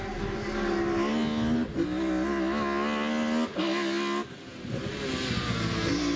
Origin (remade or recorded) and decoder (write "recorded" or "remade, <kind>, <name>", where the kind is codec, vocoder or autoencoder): recorded